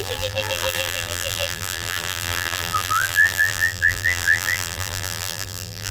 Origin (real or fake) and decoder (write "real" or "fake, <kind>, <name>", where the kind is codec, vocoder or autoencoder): fake, vocoder, BigVGAN v2